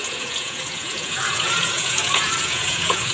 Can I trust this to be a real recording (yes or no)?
no